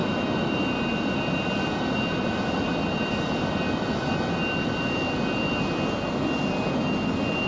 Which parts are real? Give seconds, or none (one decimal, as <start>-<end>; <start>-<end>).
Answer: 0.0-0.9; 4.4-7.5